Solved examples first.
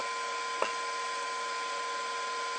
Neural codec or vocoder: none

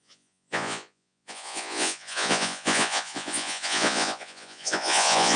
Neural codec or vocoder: vocoder, Vocos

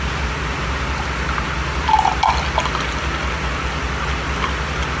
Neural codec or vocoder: none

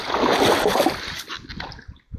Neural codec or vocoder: none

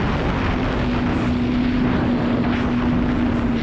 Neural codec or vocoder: none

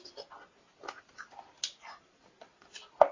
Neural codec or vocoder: none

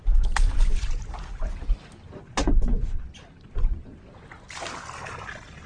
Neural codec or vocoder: none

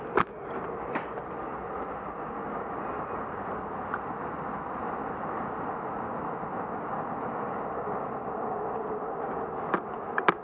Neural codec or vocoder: none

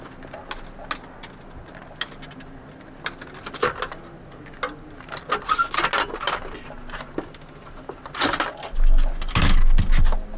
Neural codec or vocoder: none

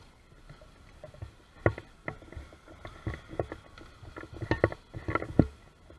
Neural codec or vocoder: none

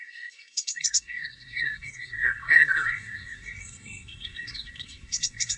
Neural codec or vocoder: codec, SNAC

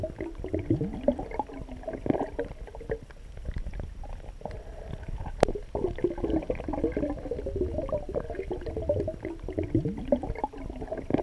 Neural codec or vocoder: none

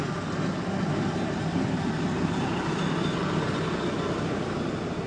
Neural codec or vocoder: none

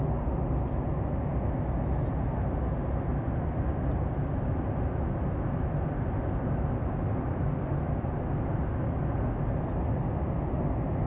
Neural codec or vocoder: none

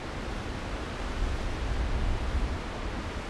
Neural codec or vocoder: none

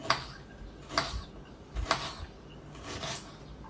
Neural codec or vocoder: none